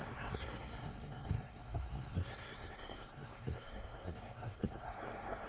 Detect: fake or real fake